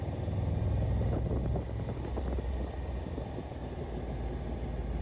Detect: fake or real real